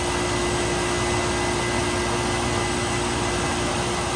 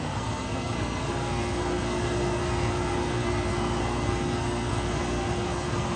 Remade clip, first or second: second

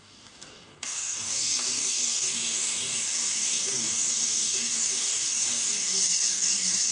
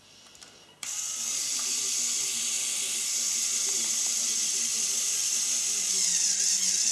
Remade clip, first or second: first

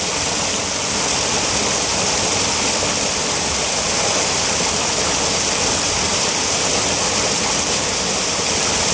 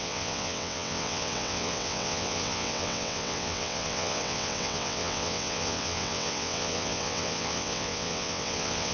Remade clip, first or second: second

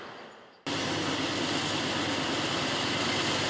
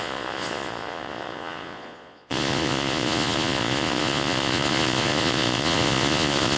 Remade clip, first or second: second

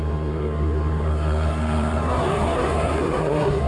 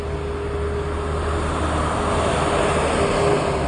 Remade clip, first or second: first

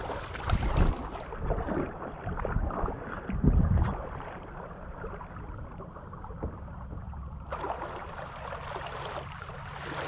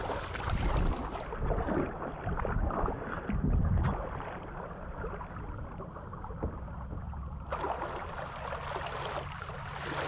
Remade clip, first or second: first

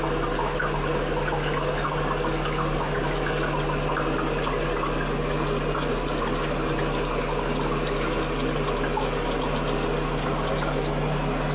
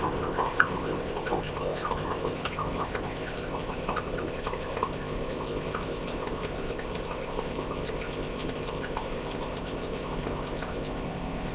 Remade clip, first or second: second